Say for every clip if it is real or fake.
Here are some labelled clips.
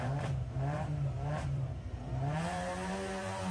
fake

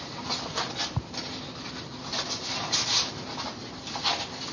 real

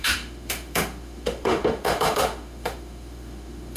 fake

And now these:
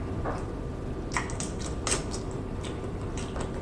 real